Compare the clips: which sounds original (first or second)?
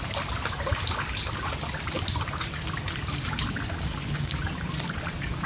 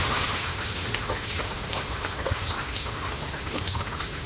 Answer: first